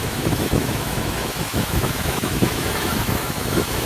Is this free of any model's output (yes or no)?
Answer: no